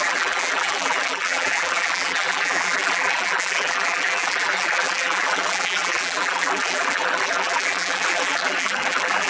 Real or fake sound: fake